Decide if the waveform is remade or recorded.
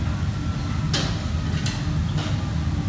recorded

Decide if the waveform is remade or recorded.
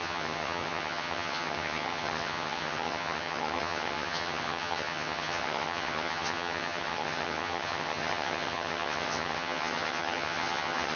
remade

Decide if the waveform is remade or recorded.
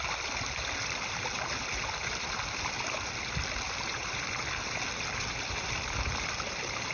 recorded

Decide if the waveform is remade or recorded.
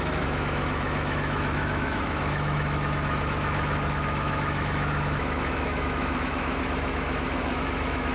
remade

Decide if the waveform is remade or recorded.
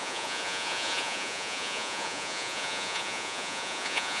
remade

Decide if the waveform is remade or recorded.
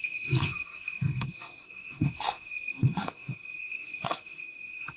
remade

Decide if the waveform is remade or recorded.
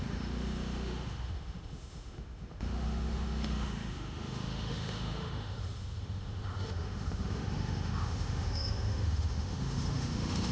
remade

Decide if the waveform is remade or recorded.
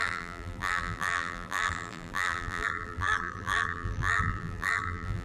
remade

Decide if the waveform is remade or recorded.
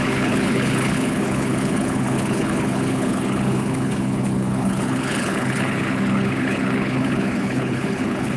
remade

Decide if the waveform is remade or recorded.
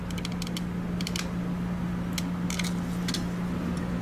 recorded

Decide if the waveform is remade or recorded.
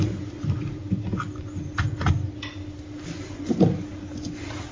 recorded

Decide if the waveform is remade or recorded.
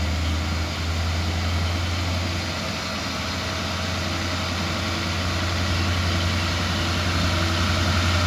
recorded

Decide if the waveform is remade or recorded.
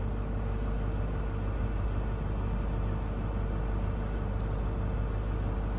recorded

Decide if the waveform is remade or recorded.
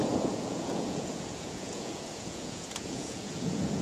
remade